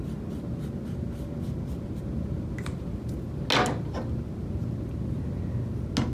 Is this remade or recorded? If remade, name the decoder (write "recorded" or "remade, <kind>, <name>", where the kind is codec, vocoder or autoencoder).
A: recorded